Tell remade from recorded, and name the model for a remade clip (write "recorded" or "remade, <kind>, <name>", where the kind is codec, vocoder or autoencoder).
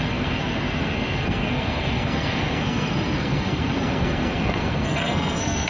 remade, codec, SNAC